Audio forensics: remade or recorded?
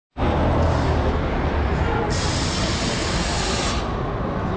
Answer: recorded